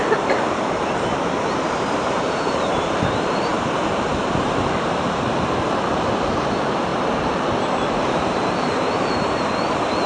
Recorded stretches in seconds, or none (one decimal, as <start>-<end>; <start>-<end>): 3.5-4.4; 6.9-7.9